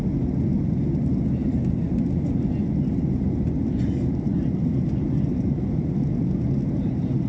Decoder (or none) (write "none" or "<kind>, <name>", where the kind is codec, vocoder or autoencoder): none